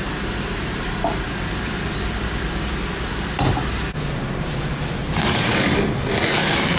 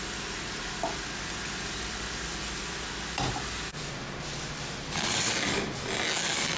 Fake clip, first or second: first